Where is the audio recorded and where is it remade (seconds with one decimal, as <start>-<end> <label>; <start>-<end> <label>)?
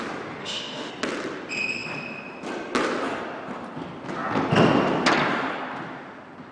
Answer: 0.0-0.4 recorded; 0.4-0.9 remade; 0.9-6.5 recorded